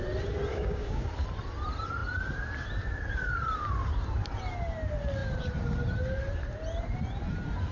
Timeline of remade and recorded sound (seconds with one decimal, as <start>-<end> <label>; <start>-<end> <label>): 0.0-0.5 recorded; 0.5-1.1 remade; 1.1-7.7 recorded